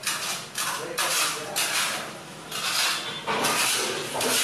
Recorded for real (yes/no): yes